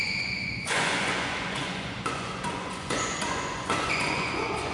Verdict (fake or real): fake